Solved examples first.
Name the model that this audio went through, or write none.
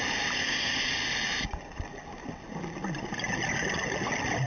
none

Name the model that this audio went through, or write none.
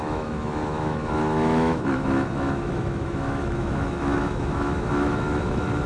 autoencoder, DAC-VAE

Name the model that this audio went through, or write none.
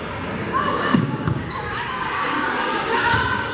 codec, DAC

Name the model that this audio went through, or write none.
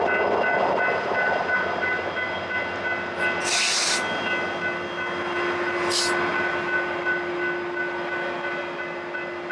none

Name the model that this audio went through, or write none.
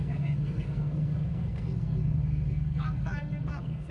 codec, SNAC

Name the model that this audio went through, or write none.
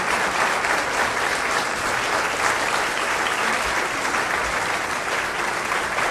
none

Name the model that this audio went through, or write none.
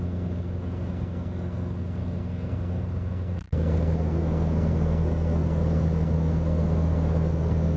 codec, SNAC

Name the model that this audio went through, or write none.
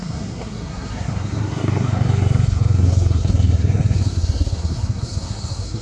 codec, SNAC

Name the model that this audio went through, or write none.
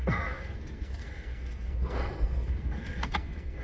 codec, SNAC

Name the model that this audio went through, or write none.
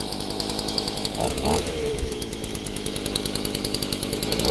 autoencoder, DAC-VAE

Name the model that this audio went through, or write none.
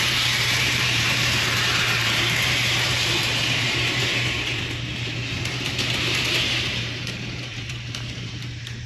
vocoder, BigVGAN v2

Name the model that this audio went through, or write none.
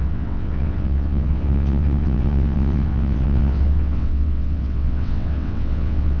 vocoder, WaveNeXt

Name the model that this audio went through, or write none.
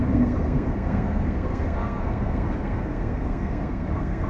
codec, SNAC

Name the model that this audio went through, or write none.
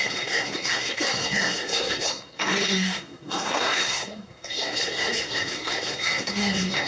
codec, SNAC